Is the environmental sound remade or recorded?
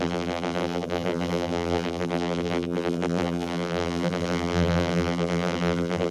remade